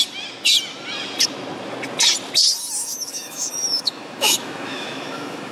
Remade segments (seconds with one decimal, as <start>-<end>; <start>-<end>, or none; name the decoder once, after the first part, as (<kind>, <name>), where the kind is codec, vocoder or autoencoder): 2.8-5.5 (autoencoder, DAC-VAE)